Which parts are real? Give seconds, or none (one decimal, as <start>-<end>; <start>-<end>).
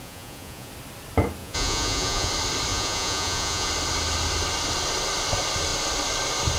0.7-1.4; 2.3-2.7; 3.7-6.6